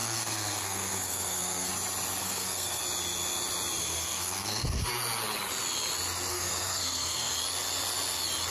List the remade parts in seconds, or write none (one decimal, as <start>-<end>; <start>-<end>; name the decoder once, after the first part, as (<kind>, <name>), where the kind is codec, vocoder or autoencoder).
0.0-1.7 (codec, SNAC); 2.2-2.8; 3.8-4.9; 6.3-7.3